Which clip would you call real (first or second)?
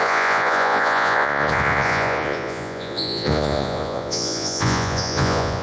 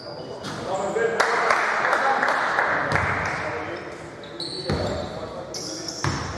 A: second